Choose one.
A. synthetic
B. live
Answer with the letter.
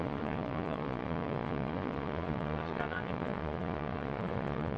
A